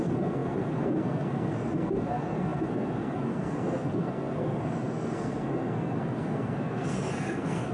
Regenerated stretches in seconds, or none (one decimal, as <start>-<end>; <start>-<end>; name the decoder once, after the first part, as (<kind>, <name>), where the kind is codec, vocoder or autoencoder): 0.0-7.7 (codec, SNAC)